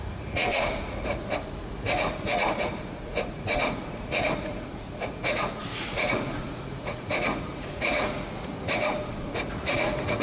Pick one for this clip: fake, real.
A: fake